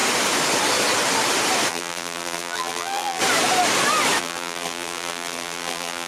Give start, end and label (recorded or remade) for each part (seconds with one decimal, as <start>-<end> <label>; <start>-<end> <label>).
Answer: 0.0-1.7 recorded; 1.7-3.2 remade; 3.2-4.2 recorded; 4.2-6.1 remade